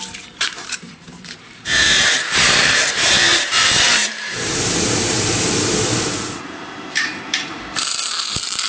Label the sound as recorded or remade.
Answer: remade